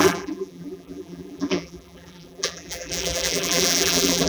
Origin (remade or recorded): remade